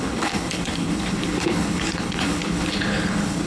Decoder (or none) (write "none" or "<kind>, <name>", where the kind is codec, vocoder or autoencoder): codec, HILCodec